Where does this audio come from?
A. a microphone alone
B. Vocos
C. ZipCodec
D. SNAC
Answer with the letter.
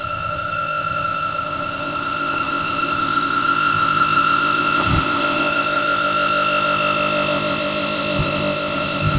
C